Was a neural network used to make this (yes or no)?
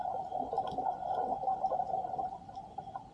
no